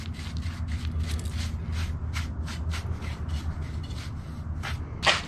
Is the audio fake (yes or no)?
no